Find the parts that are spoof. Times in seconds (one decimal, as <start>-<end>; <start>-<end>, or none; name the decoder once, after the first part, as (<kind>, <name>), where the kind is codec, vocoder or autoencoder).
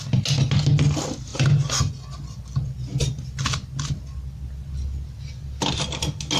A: none